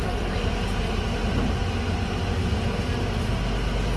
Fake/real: real